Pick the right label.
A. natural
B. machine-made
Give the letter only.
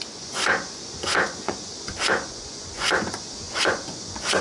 B